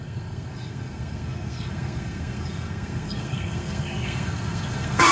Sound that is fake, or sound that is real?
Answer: fake